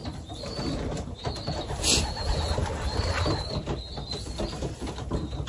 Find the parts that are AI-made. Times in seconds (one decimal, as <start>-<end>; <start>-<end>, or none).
none